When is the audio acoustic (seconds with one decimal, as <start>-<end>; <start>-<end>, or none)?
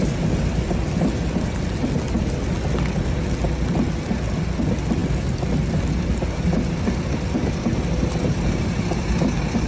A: 0.0-9.7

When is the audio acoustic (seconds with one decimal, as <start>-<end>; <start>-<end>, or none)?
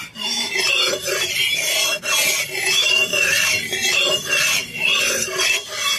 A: 0.0-6.0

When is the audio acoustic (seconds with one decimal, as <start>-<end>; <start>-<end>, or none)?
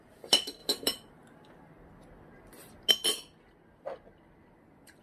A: 0.0-5.0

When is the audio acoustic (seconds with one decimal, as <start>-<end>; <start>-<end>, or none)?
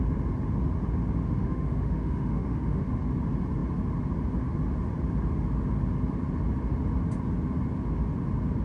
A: 0.0-1.2; 2.9-8.6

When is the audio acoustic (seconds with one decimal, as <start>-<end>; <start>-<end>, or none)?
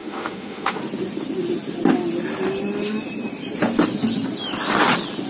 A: 0.8-5.3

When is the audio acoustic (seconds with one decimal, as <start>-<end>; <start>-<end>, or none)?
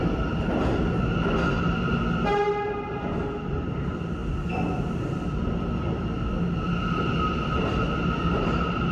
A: 0.0-8.9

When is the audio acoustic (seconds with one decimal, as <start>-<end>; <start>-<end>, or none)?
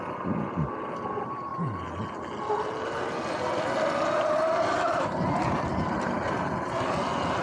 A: 0.0-7.4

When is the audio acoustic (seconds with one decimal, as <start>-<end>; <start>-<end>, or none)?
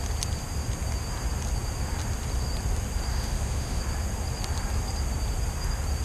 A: 0.0-3.1; 3.8-6.0